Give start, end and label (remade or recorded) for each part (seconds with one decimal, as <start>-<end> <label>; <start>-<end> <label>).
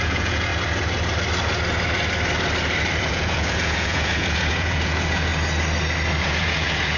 0.0-0.5 remade; 0.5-3.0 recorded; 3.0-5.3 remade; 5.3-6.2 recorded; 6.2-7.0 remade